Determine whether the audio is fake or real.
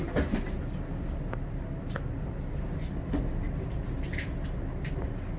real